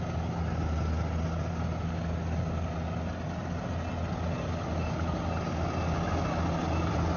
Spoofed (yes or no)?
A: no